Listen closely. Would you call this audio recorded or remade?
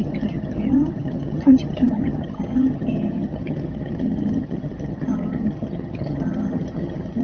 remade